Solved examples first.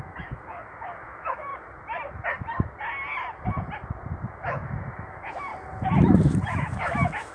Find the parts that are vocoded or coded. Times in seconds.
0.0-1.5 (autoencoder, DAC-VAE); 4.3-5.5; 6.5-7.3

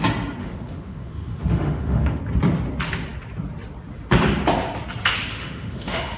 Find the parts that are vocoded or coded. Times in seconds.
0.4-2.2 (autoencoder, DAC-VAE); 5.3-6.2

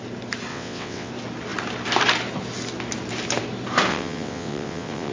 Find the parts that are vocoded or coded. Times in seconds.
0.5-1.1 (vocoder, WaveNeXt); 3.9-5.1

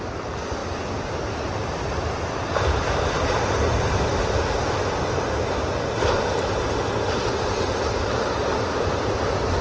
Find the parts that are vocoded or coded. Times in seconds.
none